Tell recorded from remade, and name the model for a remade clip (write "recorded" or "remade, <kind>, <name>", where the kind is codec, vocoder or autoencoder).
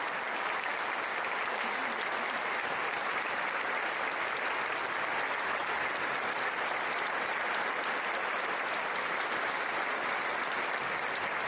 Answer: recorded